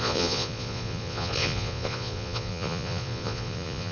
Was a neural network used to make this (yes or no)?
yes